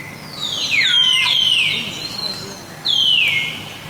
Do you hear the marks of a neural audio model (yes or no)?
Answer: no